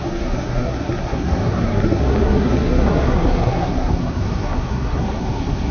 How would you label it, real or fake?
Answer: fake